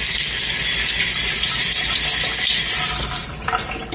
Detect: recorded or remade recorded